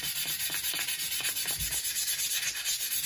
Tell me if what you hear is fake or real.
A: real